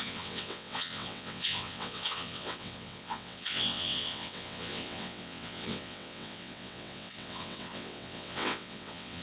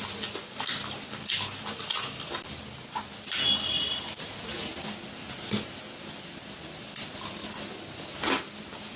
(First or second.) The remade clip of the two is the first